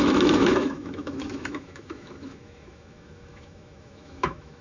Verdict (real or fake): fake